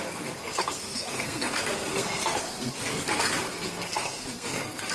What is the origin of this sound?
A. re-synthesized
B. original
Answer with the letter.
A